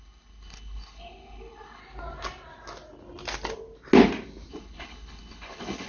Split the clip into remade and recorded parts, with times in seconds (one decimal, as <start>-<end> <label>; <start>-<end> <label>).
0.0-1.8 remade; 1.8-4.5 recorded; 4.5-5.9 remade

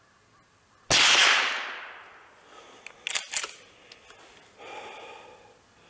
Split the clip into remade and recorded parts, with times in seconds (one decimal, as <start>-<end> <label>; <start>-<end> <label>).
0.0-5.9 recorded

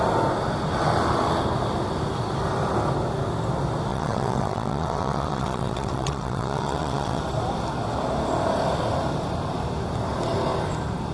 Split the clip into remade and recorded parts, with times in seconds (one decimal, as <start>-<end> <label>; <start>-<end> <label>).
0.0-3.9 recorded; 3.9-7.2 remade; 7.2-11.1 recorded

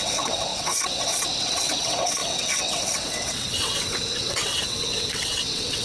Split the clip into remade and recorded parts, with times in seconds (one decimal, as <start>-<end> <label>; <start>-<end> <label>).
0.0-5.8 remade

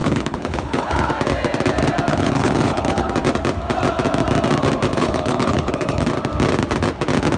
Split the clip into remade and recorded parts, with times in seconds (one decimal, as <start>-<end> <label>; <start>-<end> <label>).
0.0-1.1 remade; 1.1-2.1 recorded; 2.1-3.1 remade; 3.1-4.9 recorded; 4.9-6.1 remade; 6.1-7.4 recorded

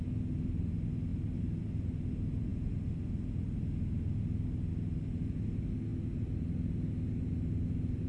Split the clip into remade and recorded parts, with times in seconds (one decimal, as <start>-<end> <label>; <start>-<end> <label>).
0.0-8.1 recorded

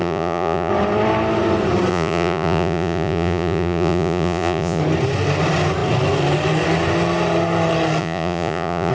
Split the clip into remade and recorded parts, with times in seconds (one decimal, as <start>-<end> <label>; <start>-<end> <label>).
0.0-0.7 remade; 0.7-1.9 recorded; 1.9-4.8 remade; 4.8-8.0 recorded; 8.0-8.9 remade

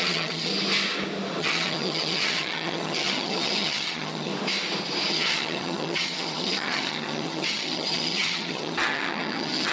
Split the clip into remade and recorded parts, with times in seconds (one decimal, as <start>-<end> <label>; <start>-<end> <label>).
0.0-0.5 remade; 0.5-1.4 recorded; 1.4-4.3 remade; 4.3-5.1 recorded; 5.1-9.7 remade